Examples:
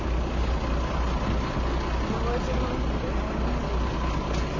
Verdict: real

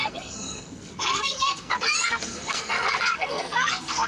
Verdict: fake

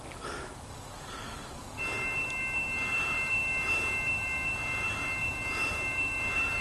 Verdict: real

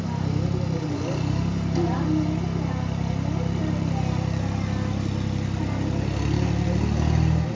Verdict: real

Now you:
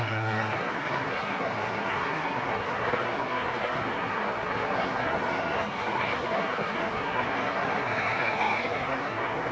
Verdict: fake